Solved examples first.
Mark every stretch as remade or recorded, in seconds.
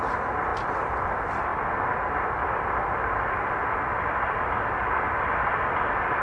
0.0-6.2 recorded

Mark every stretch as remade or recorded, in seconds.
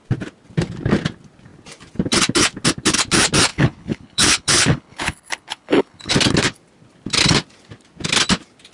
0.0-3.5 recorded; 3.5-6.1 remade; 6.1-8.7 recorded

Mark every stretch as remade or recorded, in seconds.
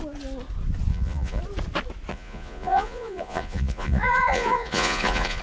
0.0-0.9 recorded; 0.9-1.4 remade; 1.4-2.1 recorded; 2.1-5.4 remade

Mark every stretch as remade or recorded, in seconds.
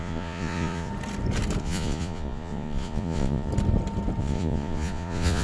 0.0-0.9 remade; 0.9-1.6 recorded; 1.6-3.5 remade; 3.5-4.2 recorded; 4.2-5.4 remade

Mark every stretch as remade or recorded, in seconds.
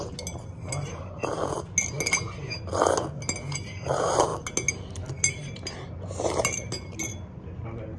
0.0-8.0 recorded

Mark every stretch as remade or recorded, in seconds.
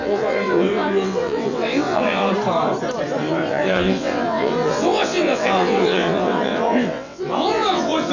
0.0-2.3 remade; 2.3-3.2 recorded; 3.2-8.1 remade